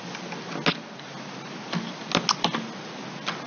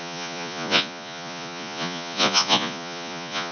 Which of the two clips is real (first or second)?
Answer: first